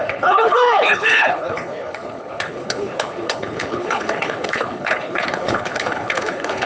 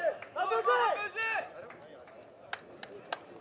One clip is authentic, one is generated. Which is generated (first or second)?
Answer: first